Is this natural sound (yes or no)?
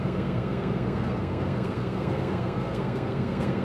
no